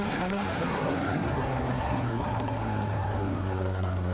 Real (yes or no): no